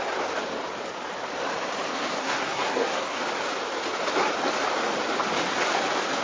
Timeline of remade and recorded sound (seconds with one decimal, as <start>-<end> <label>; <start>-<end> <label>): 0.0-2.2 recorded; 2.2-3.2 remade; 3.2-6.2 recorded